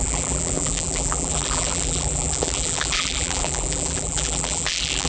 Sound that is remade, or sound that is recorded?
remade